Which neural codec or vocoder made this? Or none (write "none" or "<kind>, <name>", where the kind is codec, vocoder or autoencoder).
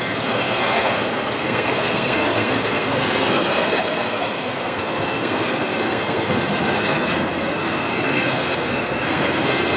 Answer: codec, SNAC